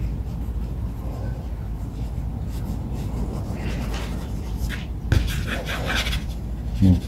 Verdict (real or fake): real